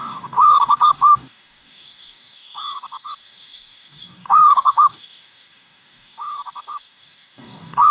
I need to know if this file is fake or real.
fake